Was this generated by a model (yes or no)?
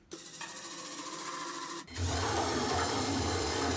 yes